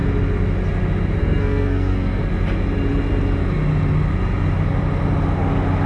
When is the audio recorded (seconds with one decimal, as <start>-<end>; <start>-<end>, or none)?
0.0-1.2; 2.2-5.9